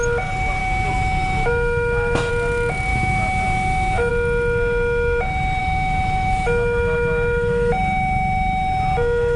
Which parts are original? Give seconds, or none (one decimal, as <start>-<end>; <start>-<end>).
0.0-0.6; 2.3-2.9; 4.1-5.6; 7.7-9.4